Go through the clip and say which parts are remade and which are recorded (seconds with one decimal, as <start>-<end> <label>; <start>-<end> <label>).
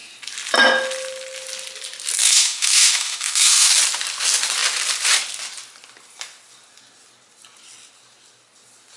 0.0-2.2 recorded; 2.2-3.7 remade; 3.7-9.0 recorded